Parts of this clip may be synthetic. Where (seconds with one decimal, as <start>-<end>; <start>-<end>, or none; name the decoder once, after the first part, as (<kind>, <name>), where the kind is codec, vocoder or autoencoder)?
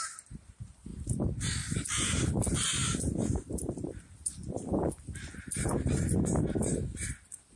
none